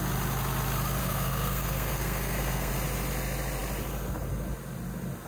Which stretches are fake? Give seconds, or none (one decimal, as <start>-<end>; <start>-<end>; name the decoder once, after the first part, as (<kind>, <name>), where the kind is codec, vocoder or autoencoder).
1.0-2.7 (codec, SNAC)

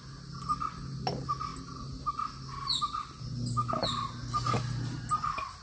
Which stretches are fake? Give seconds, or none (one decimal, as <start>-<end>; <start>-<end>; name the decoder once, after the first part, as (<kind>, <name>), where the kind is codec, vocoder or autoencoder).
none

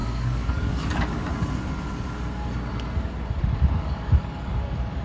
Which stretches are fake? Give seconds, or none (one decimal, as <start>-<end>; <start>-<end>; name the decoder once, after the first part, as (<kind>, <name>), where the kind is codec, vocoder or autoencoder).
0.0-1.3 (codec, DAC); 3.3-5.0

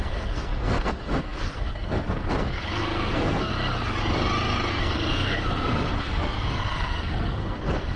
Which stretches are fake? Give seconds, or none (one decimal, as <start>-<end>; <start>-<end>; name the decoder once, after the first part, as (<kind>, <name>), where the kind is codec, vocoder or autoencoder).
0.0-3.5 (codec, SNAC); 4.7-8.0

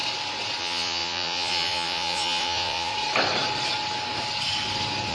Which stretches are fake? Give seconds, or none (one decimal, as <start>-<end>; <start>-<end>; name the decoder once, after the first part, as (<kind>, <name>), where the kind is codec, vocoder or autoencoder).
0.6-2.9 (vocoder, Vocos)

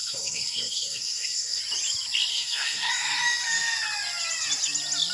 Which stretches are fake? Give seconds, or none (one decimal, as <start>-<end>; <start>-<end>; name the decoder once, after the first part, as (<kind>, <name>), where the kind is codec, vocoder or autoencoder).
0.0-1.6 (codec, SNAC); 2.3-2.9